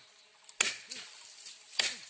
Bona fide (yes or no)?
yes